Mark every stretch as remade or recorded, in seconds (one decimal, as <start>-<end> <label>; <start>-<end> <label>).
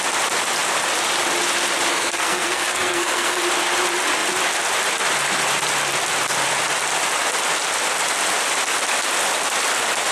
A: 0.0-1.9 recorded; 1.9-3.4 remade; 3.4-10.1 recorded